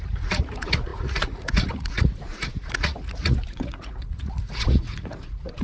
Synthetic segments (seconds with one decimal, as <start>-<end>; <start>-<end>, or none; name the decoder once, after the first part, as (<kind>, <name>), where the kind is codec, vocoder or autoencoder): 0.0-5.6 (vocoder, Vocos)